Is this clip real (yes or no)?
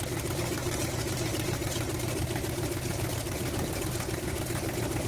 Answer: no